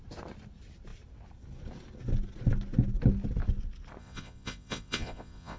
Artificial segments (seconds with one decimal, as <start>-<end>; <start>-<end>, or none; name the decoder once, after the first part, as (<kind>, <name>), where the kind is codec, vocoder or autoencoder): 4.0-5.6 (vocoder, Vocos)